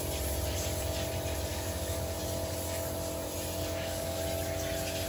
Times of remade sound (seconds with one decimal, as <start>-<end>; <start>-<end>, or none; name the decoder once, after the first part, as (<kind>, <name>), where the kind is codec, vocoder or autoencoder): 1.5-2.2 (codec, DAC); 3.6-4.2